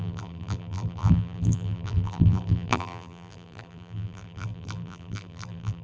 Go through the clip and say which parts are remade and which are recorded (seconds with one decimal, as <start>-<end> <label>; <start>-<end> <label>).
0.0-5.8 remade